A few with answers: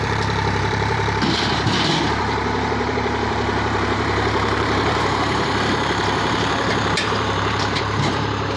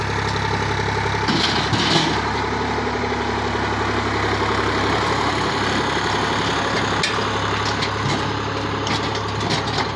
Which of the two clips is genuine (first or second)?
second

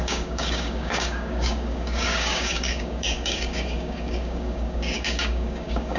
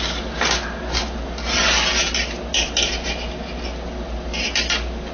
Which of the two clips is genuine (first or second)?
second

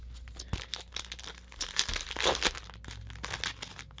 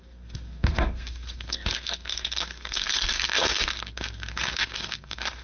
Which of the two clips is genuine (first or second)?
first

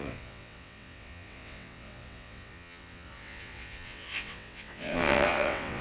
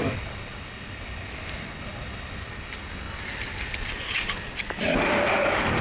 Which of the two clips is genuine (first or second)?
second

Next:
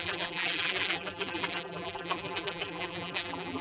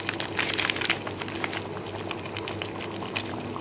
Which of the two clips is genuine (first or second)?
second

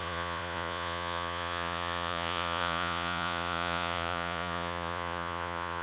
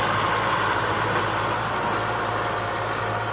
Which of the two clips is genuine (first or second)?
second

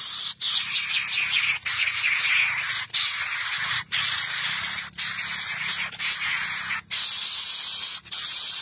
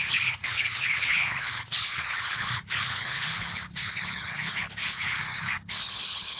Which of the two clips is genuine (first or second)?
first